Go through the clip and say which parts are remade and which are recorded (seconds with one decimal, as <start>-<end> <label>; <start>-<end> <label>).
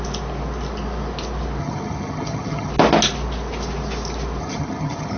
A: 0.0-1.6 recorded; 1.6-2.7 remade; 2.7-4.4 recorded; 4.4-5.2 remade